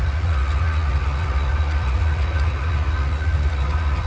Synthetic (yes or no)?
yes